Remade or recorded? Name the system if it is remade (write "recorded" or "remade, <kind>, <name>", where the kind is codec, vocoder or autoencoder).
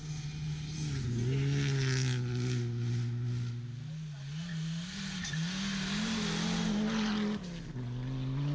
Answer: recorded